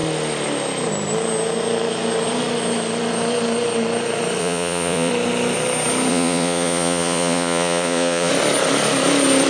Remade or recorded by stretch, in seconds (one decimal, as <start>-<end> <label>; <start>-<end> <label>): 0.0-4.4 recorded; 4.4-5.1 remade; 5.1-6.1 recorded; 6.1-8.3 remade; 8.3-9.5 recorded